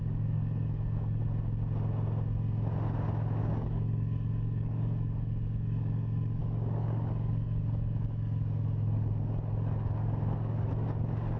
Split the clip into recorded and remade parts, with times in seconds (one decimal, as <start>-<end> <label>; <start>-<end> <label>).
0.0-1.2 remade; 1.2-3.4 recorded; 3.4-11.4 remade